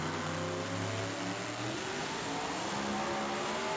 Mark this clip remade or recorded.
recorded